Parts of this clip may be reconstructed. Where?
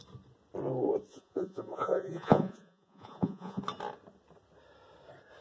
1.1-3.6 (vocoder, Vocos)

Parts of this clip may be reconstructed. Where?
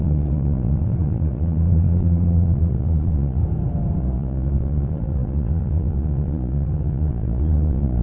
0.0-3.4 (vocoder, Vocos); 4.0-8.0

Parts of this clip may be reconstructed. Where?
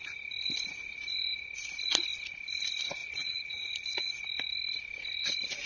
3.0-4.2 (vocoder, Vocos)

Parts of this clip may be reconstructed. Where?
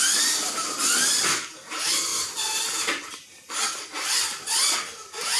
none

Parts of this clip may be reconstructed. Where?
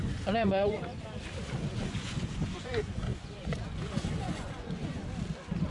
0.0-0.9 (vocoder, Vocos); 1.7-5.0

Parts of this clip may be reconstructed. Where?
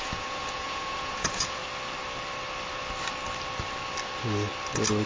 0.0-1.6 (vocoder, Vocos)